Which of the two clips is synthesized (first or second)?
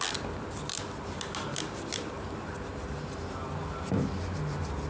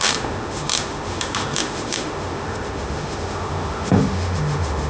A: second